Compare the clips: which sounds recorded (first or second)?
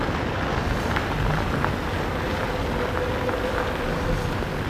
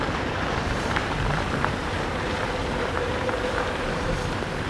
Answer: first